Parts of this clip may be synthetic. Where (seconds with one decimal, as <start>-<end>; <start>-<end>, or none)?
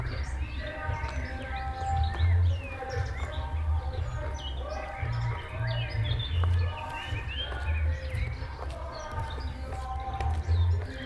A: none